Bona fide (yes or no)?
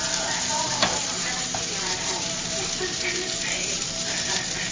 no